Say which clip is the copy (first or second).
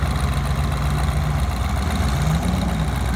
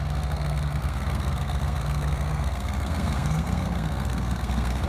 second